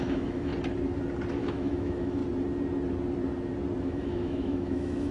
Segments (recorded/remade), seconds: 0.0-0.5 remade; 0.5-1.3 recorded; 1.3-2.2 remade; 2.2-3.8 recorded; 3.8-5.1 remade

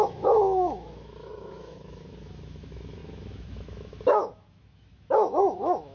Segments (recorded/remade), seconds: 0.0-5.9 remade

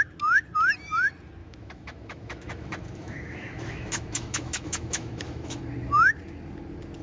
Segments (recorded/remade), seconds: 0.0-1.4 recorded; 1.4-5.6 remade; 5.6-7.0 recorded

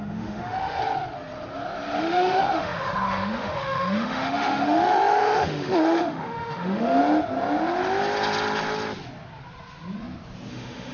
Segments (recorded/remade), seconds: 0.0-0.8 remade; 0.8-2.0 recorded; 2.0-7.0 remade; 7.0-10.5 recorded; 10.5-10.9 remade

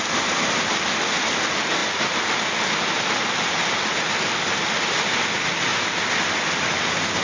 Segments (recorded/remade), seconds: 0.0-7.2 recorded

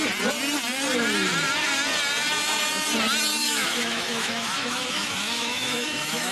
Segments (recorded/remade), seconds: 0.0-3.4 recorded; 3.4-6.3 remade